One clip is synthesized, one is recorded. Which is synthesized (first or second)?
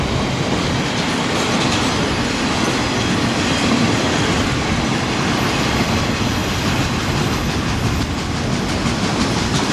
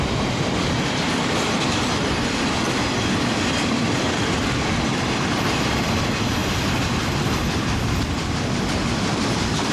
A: second